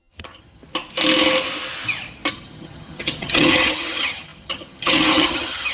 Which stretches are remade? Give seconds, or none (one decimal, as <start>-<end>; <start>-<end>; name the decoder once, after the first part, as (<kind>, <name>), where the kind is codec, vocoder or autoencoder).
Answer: 0.0-0.6 (vocoder, HiFi-GAN); 2.3-5.7